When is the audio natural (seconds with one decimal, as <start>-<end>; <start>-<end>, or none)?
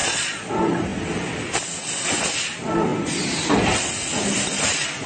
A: 0.5-5.1